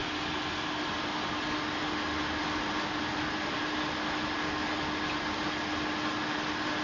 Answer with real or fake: real